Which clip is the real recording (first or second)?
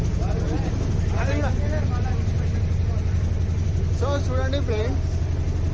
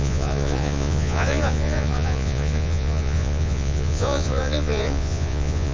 first